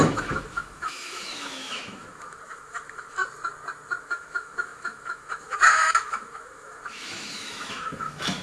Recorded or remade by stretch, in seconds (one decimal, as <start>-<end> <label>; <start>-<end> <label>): 0.0-3.2 remade; 3.2-4.0 recorded; 4.0-8.4 remade